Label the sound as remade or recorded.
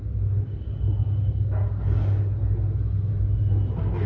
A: recorded